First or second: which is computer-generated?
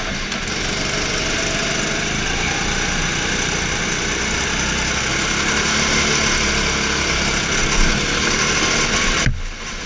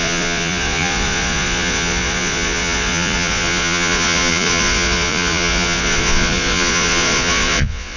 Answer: second